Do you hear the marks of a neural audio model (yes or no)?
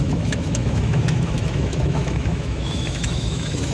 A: yes